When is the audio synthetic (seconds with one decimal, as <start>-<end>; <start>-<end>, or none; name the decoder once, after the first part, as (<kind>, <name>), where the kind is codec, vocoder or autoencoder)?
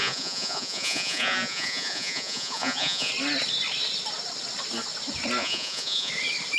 0.0-3.1 (vocoder, Vocos); 5.4-6.1